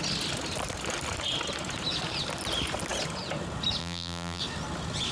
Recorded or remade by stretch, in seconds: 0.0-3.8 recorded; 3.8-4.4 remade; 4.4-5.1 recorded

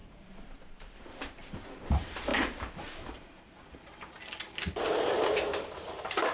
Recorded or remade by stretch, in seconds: 0.0-2.3 remade; 2.3-4.8 recorded; 4.8-6.3 remade

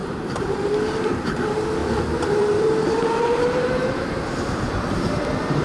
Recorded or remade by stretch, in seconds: 0.0-0.8 remade; 0.8-1.8 recorded; 1.8-5.6 remade

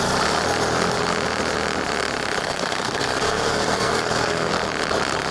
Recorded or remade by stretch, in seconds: 0.0-2.4 recorded; 2.4-4.5 remade; 4.5-5.3 recorded

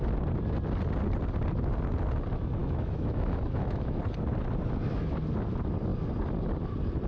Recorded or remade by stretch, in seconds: 0.0-2.6 recorded; 2.6-4.0 remade; 4.0-7.1 recorded